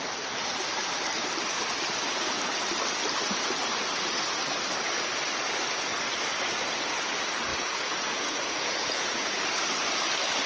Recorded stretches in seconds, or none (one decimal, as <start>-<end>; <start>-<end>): 0.0-7.5; 9.4-10.5